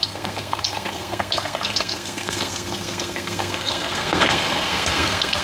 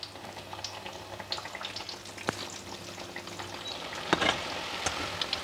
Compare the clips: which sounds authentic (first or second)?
second